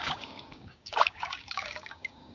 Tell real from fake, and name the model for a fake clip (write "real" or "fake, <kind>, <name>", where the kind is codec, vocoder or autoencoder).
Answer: fake, codec, DAC